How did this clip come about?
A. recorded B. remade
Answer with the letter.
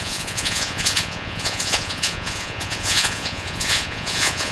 B